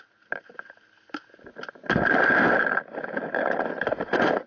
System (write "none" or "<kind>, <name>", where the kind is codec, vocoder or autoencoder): none